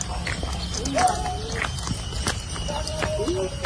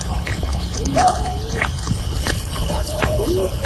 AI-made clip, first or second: second